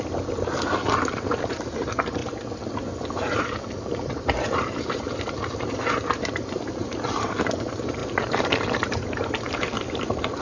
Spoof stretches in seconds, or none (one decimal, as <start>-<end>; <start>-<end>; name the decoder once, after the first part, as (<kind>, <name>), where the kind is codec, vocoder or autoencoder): 0.0-10.4 (vocoder, BigVGAN v2)